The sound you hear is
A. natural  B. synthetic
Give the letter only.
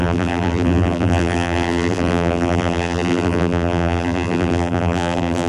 B